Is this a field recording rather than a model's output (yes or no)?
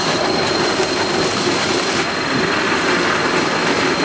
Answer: no